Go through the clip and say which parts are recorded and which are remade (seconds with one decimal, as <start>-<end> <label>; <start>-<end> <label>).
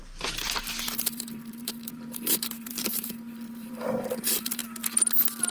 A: 0.0-4.6 remade; 4.6-5.5 recorded